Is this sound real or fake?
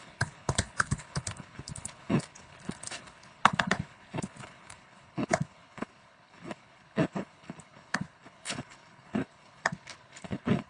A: fake